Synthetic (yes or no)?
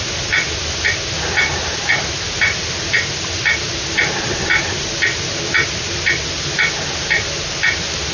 no